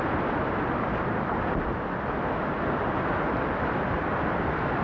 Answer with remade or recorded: recorded